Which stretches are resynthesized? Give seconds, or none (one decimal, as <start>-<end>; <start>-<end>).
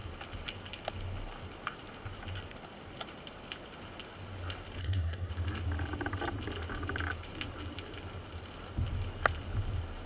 4.8-5.3